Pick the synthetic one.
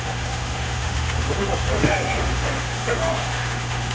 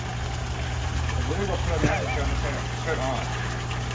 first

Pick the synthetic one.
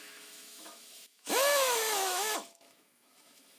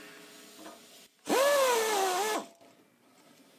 first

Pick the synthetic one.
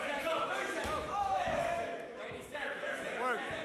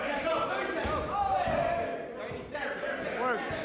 first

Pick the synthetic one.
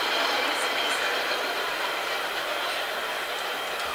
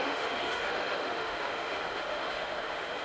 second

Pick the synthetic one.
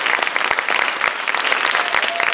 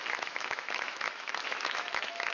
second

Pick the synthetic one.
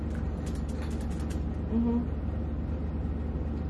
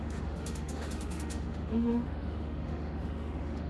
second